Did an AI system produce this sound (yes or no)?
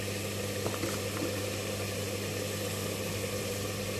no